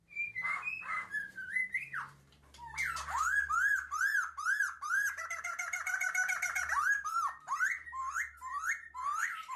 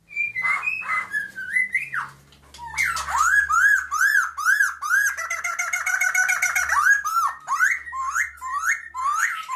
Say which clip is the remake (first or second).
first